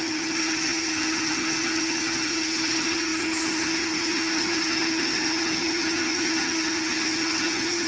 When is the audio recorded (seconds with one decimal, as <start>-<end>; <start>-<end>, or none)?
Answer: none